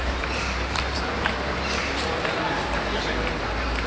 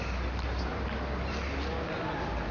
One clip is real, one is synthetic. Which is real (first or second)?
second